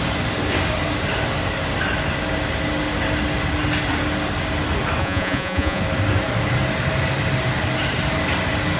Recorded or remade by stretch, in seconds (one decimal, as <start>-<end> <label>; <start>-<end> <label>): 0.0-5.0 recorded; 5.0-5.8 remade; 5.8-8.8 recorded

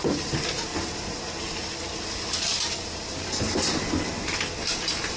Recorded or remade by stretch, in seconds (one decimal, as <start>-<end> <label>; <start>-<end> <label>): 0.0-5.2 recorded

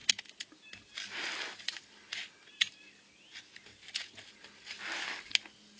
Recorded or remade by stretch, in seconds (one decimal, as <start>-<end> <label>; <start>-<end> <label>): 0.0-5.8 recorded